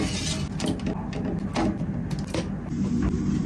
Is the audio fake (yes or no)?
no